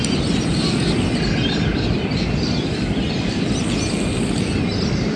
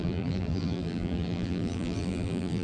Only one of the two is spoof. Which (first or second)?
second